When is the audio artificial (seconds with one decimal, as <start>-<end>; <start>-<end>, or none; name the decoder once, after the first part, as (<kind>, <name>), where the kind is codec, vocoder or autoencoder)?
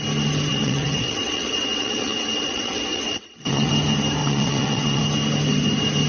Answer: 0.5-3.7 (vocoder, WaveNeXt); 4.2-5.0